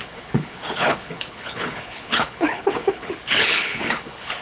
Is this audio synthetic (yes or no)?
yes